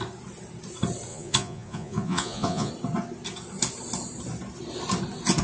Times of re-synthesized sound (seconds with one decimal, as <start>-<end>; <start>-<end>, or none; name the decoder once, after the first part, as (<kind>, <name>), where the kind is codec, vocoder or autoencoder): 1.1-2.7 (vocoder, Vocos)